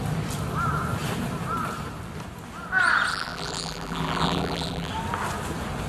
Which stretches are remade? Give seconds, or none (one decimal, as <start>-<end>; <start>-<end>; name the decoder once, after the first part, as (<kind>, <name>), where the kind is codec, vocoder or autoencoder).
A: 3.1-4.9 (vocoder, BigVGAN v2)